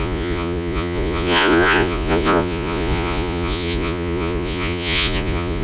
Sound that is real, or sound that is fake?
fake